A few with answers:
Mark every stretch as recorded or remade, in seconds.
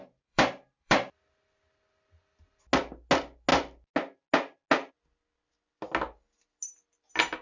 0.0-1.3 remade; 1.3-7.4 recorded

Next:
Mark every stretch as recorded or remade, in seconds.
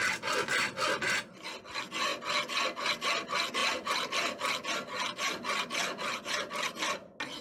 0.0-7.4 recorded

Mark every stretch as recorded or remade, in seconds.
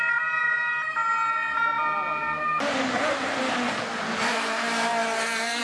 0.0-5.6 recorded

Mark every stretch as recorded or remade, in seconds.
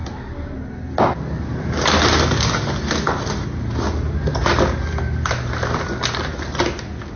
0.0-7.2 recorded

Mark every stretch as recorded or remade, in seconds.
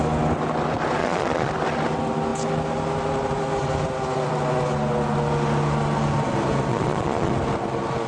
0.0-1.0 recorded; 1.0-1.5 remade; 1.5-6.7 recorded; 6.7-7.3 remade; 7.3-8.1 recorded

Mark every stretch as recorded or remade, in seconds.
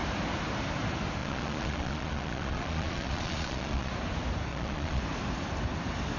0.0-1.2 recorded; 1.2-3.9 remade; 3.9-4.5 recorded; 4.5-5.0 remade; 5.0-6.2 recorded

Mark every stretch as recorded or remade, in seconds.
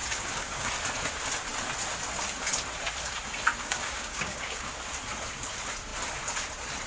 0.0-0.7 remade; 0.7-3.6 recorded; 3.6-4.7 remade; 4.7-6.9 recorded